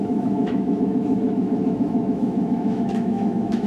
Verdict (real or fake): fake